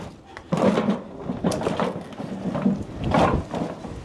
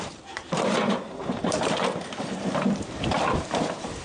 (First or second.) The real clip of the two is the first